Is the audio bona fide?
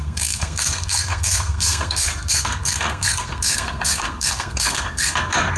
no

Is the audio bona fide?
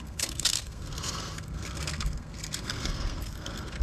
no